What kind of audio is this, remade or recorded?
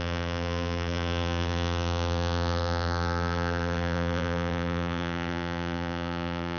remade